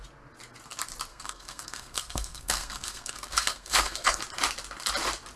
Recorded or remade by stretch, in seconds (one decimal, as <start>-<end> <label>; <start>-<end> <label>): 0.0-1.1 recorded; 1.1-4.2 remade; 4.2-5.4 recorded